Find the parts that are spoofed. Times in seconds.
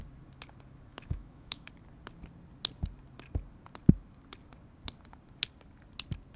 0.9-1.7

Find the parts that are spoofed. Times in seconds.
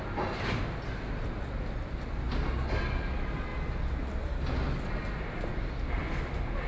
none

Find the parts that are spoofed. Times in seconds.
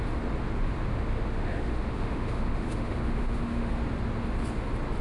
0.9-3.7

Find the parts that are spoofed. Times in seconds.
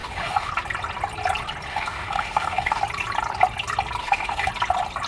0.0-0.5; 1.7-2.8; 4.0-4.5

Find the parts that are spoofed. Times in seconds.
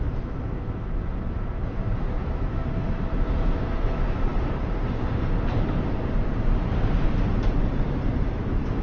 0.0-2.6; 3.1-4.3; 8.2-8.8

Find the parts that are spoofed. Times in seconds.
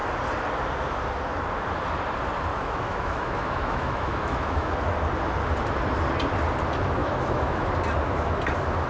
2.5-4.8; 7.0-7.7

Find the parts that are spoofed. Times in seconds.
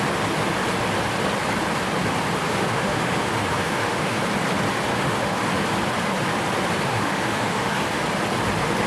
2.4-4.2; 4.9-5.4; 6.9-8.0